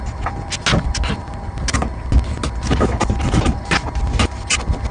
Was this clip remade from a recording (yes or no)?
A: no